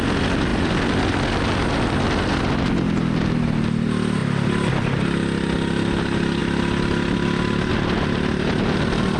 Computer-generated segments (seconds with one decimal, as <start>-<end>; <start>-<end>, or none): none